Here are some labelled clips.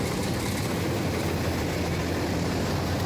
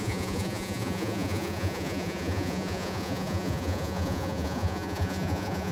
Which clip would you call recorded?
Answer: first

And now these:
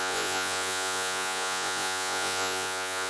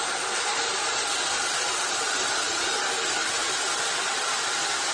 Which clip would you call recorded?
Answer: second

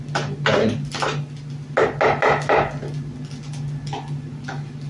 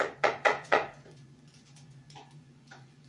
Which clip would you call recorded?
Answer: first